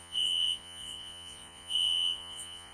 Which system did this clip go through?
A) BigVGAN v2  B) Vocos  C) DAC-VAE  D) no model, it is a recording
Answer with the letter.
B